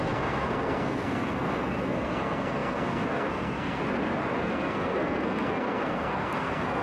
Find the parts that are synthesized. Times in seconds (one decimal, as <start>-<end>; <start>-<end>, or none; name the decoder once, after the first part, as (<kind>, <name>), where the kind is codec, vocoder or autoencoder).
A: 0.0-3.8 (codec, SNAC); 4.3-6.8